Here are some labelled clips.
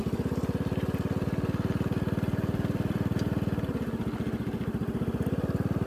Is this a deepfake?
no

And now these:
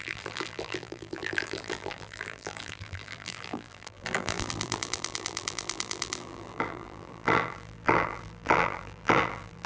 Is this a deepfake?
yes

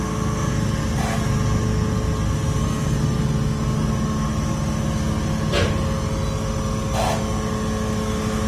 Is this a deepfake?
no